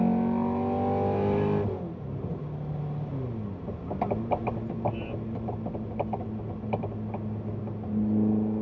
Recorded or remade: recorded